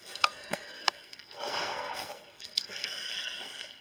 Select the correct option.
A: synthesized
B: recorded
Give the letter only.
A